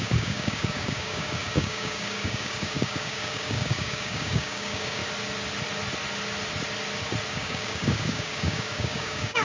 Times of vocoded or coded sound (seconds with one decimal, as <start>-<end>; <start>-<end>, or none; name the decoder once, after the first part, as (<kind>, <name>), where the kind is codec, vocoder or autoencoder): 0.0-5.0 (codec, DAC); 7.3-9.4